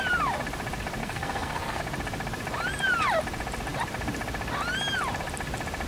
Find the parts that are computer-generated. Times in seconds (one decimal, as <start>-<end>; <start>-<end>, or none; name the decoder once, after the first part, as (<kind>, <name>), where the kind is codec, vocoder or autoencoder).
1.0-1.8 (codec, SNAC)